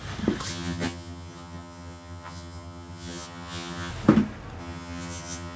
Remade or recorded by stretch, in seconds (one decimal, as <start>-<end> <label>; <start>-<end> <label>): 0.0-0.5 recorded; 0.5-3.9 remade; 3.9-4.6 recorded; 4.6-5.6 remade